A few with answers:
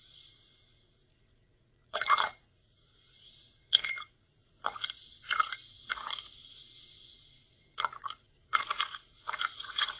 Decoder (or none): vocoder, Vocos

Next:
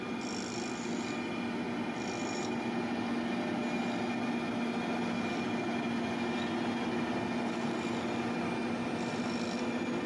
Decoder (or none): none